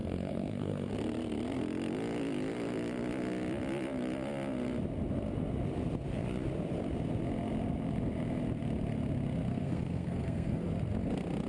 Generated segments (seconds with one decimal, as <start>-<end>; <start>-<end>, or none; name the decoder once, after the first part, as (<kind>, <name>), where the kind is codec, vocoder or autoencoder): 0.0-0.9 (codec, SNAC); 9.5-10.7